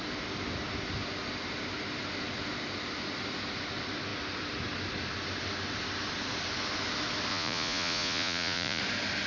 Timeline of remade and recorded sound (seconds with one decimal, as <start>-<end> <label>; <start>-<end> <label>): 0.0-7.3 recorded; 7.3-8.8 remade; 8.8-9.3 recorded

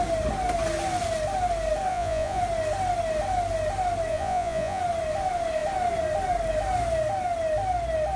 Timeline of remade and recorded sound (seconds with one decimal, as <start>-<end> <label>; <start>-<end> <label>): 0.0-1.9 recorded; 1.9-2.4 remade; 2.4-4.1 recorded; 4.1-4.8 remade; 4.8-8.2 recorded

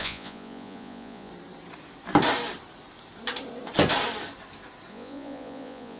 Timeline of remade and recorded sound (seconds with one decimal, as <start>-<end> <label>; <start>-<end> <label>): 0.0-1.3 remade; 1.3-4.9 recorded; 4.9-6.0 remade

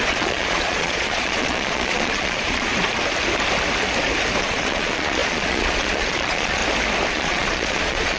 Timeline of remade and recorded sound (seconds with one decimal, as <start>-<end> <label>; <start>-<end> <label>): 0.0-2.7 remade; 2.7-4.4 recorded; 4.4-6.6 remade; 6.6-7.1 recorded; 7.1-8.2 remade

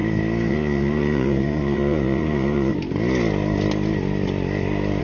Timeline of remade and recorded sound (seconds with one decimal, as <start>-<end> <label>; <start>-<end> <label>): 0.0-0.5 recorded; 0.5-2.7 remade; 2.7-5.0 recorded

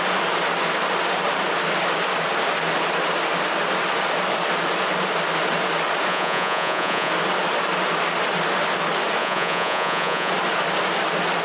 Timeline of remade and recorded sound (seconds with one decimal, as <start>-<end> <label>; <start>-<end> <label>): 0.0-6.1 recorded; 6.1-7.1 remade; 7.1-9.2 recorded; 9.2-10.3 remade; 10.3-11.4 recorded

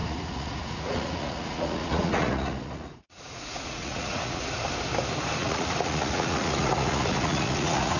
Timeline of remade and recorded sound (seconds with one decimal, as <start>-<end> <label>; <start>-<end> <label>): 0.0-4.6 remade; 4.6-5.4 recorded; 5.4-8.0 remade